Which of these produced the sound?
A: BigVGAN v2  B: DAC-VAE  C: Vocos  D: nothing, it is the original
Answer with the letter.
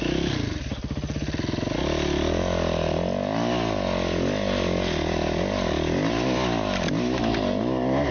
D